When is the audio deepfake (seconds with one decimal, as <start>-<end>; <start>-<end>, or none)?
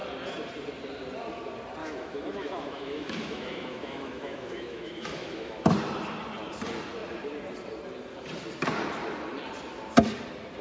1.8-5.7